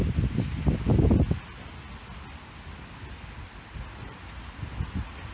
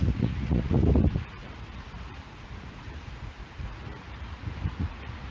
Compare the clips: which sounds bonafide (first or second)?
first